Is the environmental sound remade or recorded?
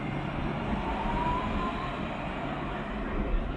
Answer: remade